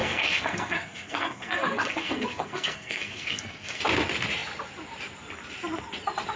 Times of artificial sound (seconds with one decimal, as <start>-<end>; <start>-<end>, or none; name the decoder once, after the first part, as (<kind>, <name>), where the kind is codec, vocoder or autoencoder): 0.0-3.8 (codec, SNAC)